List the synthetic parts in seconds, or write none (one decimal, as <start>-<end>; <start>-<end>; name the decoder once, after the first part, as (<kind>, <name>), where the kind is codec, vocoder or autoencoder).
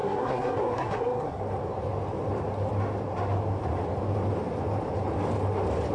0.0-1.4 (codec, SNAC)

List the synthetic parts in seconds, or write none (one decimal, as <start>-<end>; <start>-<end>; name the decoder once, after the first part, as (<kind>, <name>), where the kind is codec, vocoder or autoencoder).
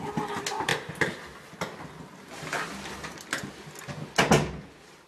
none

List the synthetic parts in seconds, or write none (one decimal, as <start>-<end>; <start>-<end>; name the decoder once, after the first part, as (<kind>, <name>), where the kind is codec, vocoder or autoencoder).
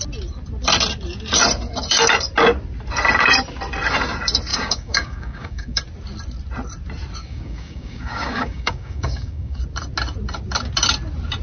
4.5-5.8 (codec, DAC); 7.2-9.6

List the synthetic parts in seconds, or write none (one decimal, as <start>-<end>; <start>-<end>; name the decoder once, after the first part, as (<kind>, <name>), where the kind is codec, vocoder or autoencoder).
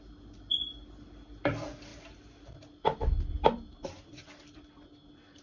none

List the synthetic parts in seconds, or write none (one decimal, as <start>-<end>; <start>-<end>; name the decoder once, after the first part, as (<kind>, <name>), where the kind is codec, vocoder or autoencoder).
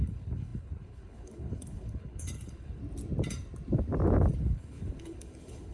0.0-2.8 (codec, HILCodec); 4.4-5.7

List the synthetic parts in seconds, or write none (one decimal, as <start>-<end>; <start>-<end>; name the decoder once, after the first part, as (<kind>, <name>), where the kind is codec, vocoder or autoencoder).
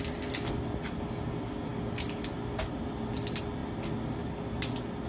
none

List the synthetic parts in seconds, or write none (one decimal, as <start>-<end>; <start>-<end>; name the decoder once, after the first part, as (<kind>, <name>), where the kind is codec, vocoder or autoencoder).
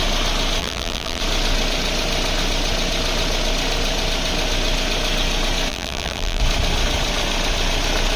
0.6-1.2 (vocoder, BigVGAN v2); 5.7-6.4